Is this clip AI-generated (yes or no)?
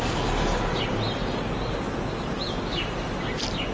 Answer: no